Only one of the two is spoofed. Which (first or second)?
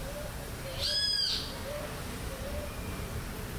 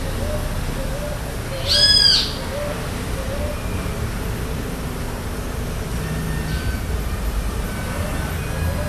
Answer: first